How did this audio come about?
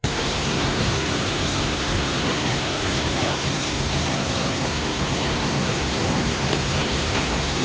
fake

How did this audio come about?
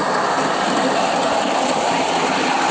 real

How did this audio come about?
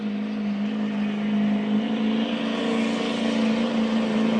real